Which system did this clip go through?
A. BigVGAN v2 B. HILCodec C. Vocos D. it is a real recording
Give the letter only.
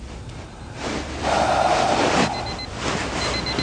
D